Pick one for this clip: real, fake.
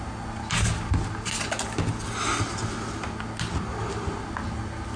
real